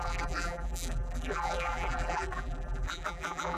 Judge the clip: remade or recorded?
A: remade